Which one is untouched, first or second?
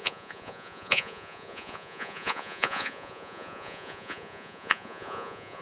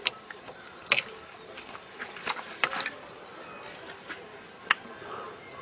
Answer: second